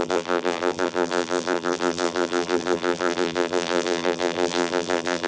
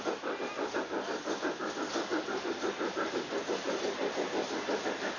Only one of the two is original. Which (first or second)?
second